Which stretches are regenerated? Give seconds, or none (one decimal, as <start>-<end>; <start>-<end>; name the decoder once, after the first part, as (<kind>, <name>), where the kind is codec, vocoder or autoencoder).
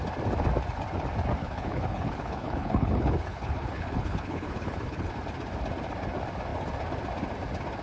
1.4-5.1 (codec, HILCodec)